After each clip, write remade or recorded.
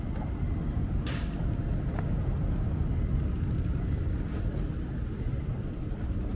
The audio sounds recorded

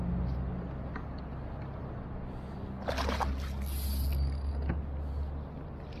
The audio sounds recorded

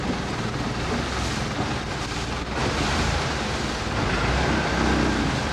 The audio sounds recorded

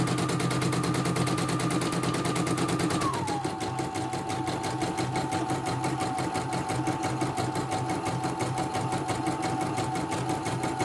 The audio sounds recorded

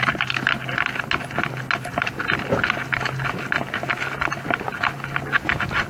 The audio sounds recorded